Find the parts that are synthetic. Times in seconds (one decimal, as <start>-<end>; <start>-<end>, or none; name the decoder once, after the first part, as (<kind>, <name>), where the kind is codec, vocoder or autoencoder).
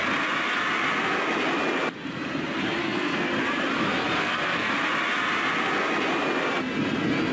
2.8-3.3 (codec, SNAC); 4.2-4.7